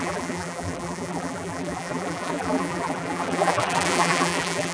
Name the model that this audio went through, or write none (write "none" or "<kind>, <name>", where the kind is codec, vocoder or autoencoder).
vocoder, BigVGAN v2